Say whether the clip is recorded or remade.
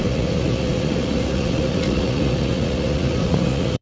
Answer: remade